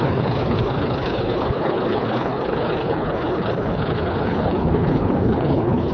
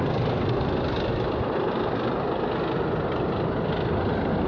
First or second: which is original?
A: second